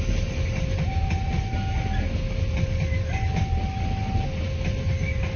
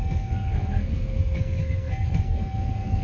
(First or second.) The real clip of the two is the first